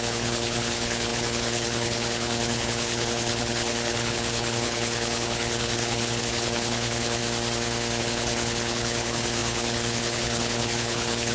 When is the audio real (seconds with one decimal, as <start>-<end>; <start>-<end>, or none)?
7.2-8.0